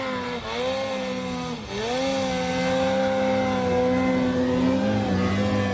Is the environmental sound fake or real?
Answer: real